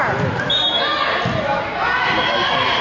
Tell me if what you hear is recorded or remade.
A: recorded